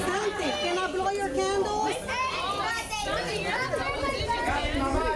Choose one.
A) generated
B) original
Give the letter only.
B